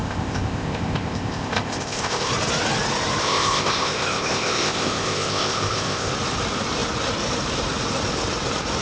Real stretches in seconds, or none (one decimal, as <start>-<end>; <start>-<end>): 2.3-3.2; 6.1-8.8

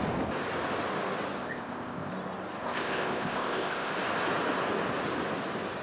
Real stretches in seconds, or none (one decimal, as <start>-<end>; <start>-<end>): 0.0-1.4; 2.1-2.6; 3.9-5.8

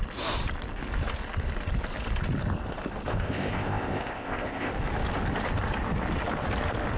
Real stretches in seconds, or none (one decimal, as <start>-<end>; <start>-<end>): 0.0-3.1; 4.7-7.0

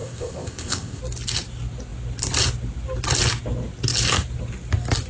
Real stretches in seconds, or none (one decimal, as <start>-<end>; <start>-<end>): 1.0-5.1

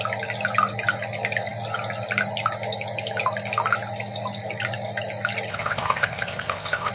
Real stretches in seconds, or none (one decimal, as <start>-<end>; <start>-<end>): 0.0-5.5

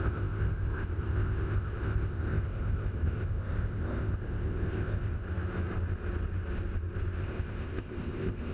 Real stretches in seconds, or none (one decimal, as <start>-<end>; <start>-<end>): 5.2-7.2

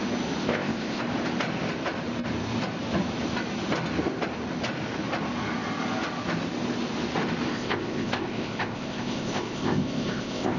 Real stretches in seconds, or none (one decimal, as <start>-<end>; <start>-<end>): 0.0-0.4; 1.0-7.5

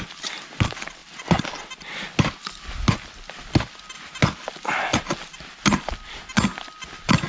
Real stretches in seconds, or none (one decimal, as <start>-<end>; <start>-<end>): 0.0-7.3